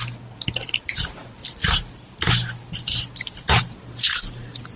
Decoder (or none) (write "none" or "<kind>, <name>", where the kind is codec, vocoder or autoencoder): none